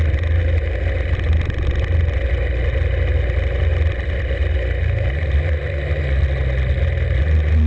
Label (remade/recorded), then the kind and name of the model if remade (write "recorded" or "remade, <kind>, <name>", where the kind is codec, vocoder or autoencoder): recorded